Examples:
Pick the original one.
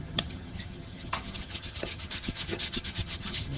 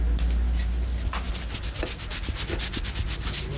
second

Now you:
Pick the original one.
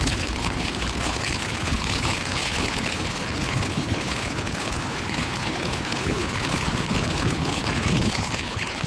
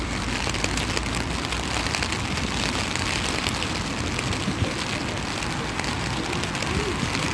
second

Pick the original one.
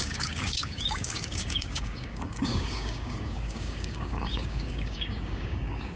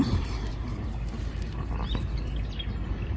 second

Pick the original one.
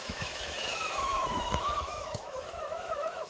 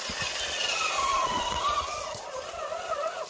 second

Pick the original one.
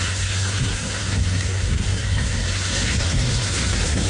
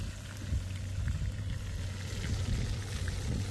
second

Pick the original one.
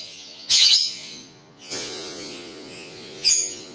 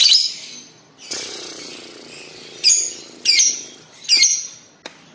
second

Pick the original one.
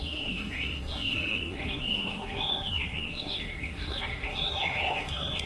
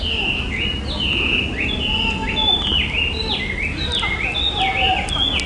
second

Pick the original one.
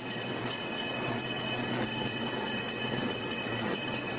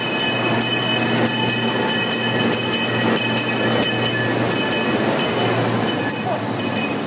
second